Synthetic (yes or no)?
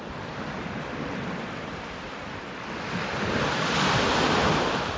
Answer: no